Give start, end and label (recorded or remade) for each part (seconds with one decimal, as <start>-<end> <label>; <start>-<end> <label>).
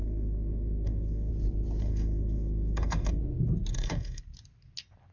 0.0-1.3 remade; 1.3-1.8 recorded; 1.8-3.2 remade; 3.2-3.7 recorded; 3.7-4.2 remade; 4.2-5.1 recorded